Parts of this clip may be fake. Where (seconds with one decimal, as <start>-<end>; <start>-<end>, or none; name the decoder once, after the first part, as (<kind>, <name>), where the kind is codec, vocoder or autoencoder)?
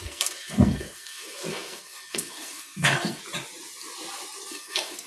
0.0-3.2 (codec, SNAC); 4.5-5.1